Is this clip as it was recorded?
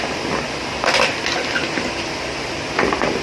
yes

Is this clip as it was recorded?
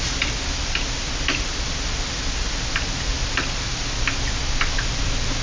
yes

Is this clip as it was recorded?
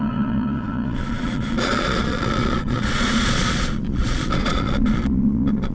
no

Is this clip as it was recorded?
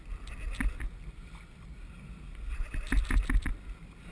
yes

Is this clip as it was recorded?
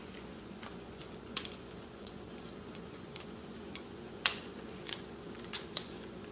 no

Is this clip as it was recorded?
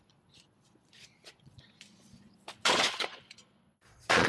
no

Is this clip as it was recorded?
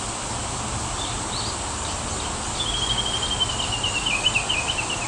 yes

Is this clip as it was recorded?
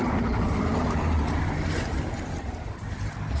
yes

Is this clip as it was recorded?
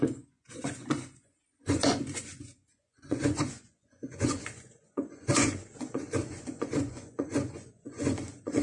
no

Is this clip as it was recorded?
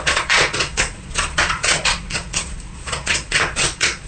no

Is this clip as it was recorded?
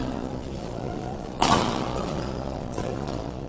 no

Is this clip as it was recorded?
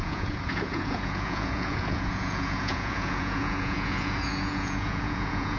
no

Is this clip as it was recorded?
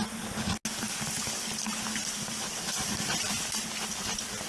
yes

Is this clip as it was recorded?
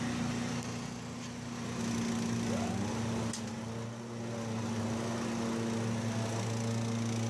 yes